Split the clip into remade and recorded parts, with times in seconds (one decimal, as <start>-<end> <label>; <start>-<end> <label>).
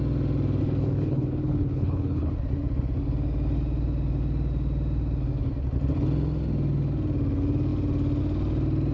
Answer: 0.0-0.6 recorded; 0.6-2.3 remade; 2.3-8.9 recorded